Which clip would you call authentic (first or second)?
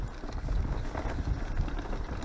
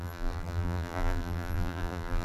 first